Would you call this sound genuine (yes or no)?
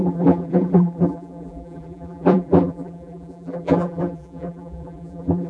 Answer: no